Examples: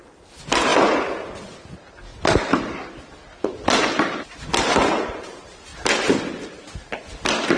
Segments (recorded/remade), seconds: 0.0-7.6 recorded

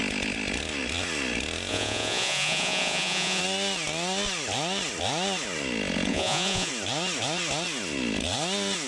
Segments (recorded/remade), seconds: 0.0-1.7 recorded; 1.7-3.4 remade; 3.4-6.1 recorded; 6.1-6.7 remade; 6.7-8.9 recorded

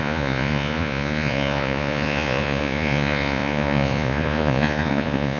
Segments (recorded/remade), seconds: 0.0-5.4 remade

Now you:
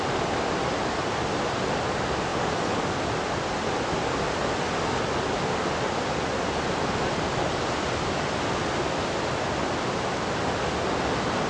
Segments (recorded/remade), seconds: 0.0-11.5 recorded

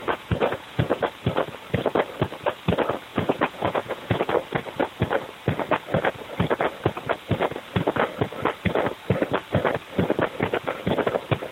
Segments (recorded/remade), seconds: 0.0-1.0 remade; 1.0-3.1 recorded; 3.1-4.2 remade; 4.2-11.5 recorded

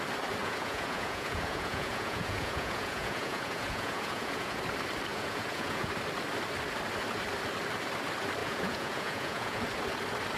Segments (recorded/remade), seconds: 0.0-0.4 recorded; 0.4-4.6 remade; 4.6-5.1 recorded; 5.1-5.9 remade; 5.9-8.4 recorded; 8.4-9.6 remade; 9.6-10.4 recorded

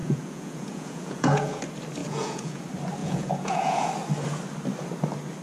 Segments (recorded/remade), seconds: 0.0-1.6 remade; 1.6-2.0 recorded; 2.0-2.6 remade; 2.6-3.0 recorded; 3.0-3.9 remade; 3.9-5.4 recorded

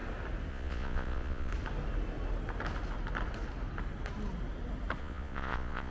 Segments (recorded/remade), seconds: 0.0-0.5 recorded; 0.5-1.5 remade; 1.5-5.0 recorded; 5.0-5.9 remade